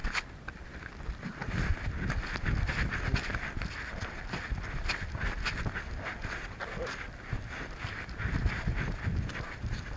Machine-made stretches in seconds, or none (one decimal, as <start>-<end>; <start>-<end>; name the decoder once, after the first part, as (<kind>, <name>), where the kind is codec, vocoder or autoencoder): none